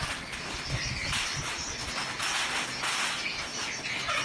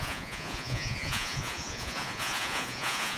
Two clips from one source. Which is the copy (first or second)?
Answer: second